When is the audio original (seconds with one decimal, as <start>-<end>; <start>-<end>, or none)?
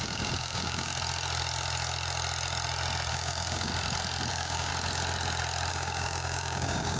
0.9-3.1; 3.7-4.3; 4.7-5.7